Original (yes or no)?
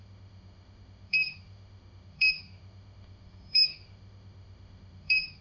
no